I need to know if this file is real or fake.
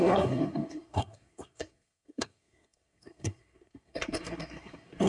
fake